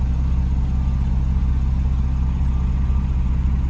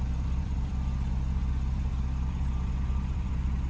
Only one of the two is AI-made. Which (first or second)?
second